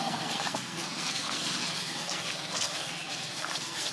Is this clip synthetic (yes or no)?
yes